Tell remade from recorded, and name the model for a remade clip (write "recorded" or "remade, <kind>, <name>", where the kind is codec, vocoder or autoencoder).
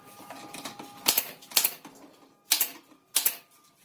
recorded